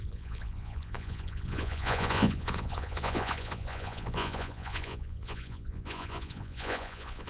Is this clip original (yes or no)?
no